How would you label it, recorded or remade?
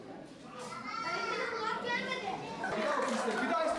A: recorded